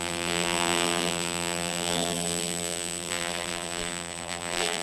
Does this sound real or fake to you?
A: fake